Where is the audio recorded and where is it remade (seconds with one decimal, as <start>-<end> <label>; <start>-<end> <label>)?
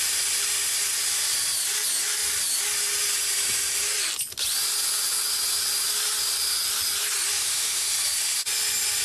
0.0-7.4 recorded; 7.4-7.9 remade; 7.9-9.0 recorded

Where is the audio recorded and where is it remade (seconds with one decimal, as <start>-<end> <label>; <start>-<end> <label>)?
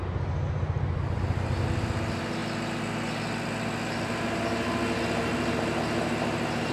0.0-6.7 recorded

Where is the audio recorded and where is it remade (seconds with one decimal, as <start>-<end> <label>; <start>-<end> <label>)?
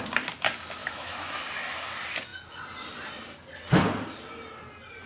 0.0-0.8 recorded; 0.8-1.4 remade; 1.4-5.1 recorded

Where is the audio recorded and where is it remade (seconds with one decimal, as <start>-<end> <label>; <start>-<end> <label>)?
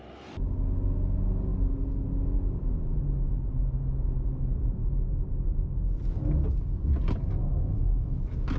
0.0-7.4 recorded; 7.4-8.2 remade; 8.2-8.6 recorded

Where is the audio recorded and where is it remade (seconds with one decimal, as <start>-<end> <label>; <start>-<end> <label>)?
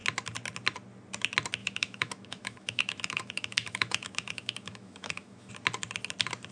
0.0-1.6 recorded; 1.6-5.5 remade; 5.5-6.5 recorded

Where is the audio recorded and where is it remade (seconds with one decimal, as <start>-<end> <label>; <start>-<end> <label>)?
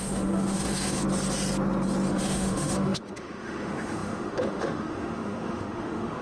0.0-1.0 remade; 1.0-2.1 recorded; 2.1-6.2 remade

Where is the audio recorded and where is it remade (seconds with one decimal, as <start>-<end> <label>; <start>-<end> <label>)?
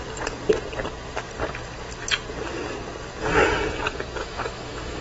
0.0-4.2 recorded; 4.2-5.0 remade